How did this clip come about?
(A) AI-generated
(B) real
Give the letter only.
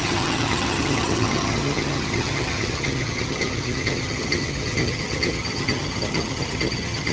A